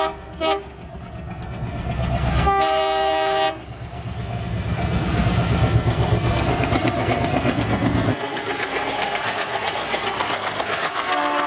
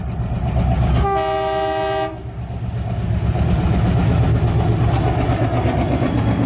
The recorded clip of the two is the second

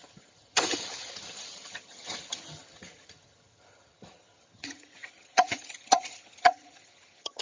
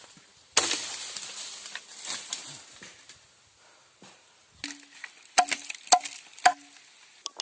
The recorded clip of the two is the second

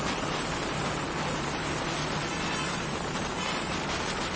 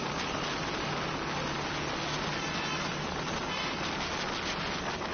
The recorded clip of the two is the second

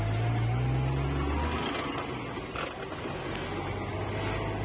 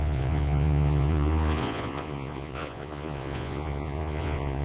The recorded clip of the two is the first